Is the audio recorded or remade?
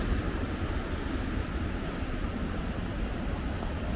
recorded